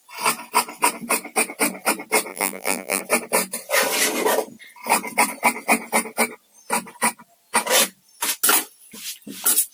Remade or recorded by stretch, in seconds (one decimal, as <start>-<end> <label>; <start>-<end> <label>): 0.0-2.3 recorded; 2.3-3.0 remade; 3.0-9.7 recorded

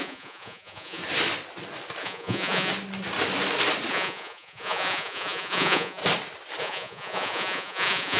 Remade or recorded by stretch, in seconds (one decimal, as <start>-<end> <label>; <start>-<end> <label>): 0.0-1.0 remade; 1.0-2.0 recorded; 2.0-2.7 remade; 2.7-3.9 recorded; 3.9-6.0 remade; 6.0-6.6 recorded; 6.6-8.2 remade

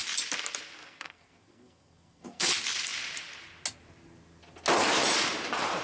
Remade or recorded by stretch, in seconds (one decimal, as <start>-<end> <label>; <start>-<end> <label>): 0.0-0.8 recorded; 0.8-2.5 remade; 2.5-5.8 recorded

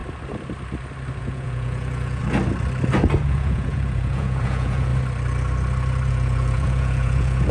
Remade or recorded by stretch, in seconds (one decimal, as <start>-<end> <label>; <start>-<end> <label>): 0.0-1.2 recorded; 1.2-2.2 remade; 2.2-3.2 recorded; 3.2-4.9 remade; 4.9-6.1 recorded; 6.1-7.5 remade

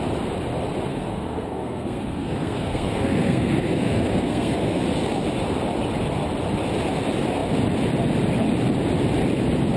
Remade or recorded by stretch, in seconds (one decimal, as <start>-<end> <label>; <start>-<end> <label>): 0.0-0.9 recorded; 0.9-4.8 remade; 4.8-9.8 recorded

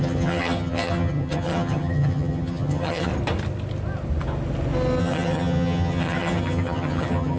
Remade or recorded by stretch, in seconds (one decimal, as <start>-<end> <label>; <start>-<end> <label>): 0.0-3.1 remade; 3.1-5.0 recorded; 5.0-7.4 remade